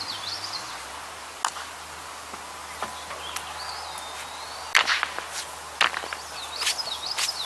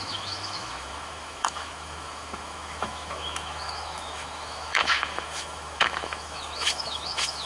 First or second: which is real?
first